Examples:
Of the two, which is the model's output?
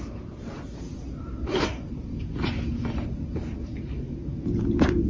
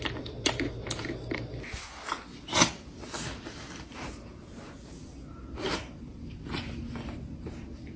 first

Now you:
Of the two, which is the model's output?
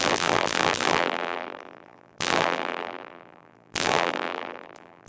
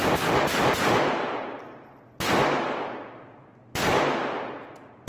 first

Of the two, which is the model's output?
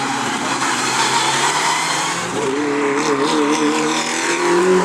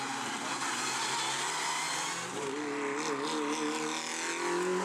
first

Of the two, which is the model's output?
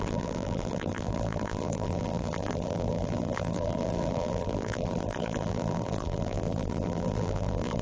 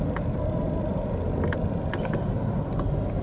first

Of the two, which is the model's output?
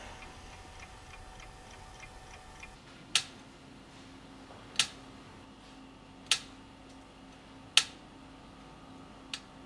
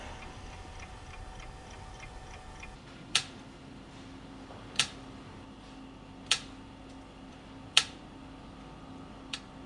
second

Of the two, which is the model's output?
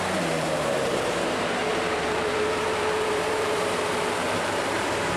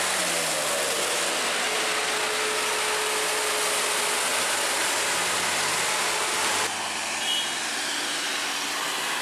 first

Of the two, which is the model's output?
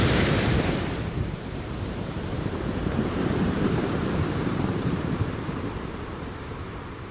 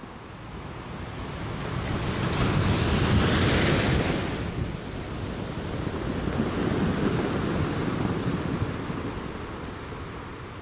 first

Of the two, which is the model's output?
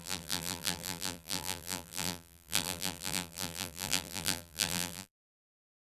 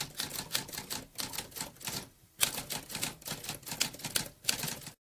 first